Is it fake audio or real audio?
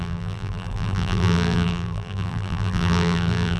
fake